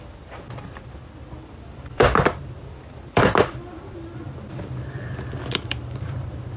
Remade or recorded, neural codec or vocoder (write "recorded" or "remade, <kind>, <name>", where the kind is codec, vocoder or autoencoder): remade, vocoder, BigVGAN v2